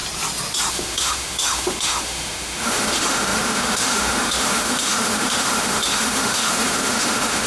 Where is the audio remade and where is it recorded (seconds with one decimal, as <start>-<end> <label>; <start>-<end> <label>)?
0.0-0.7 recorded; 0.7-7.5 remade